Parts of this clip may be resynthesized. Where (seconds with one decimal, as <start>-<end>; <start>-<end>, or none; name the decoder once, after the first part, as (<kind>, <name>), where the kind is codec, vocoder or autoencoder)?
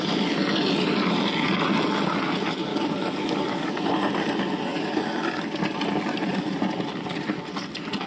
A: 2.7-3.7 (codec, DAC)